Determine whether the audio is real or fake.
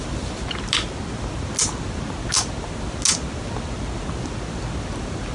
real